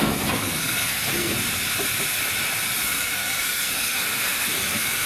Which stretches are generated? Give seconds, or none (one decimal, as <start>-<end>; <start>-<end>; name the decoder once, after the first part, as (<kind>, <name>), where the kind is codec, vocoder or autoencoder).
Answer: 0.0-1.3 (codec, SNAC); 2.8-5.1